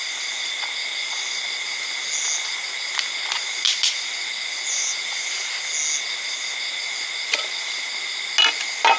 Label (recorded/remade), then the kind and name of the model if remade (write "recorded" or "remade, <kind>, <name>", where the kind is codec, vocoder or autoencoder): recorded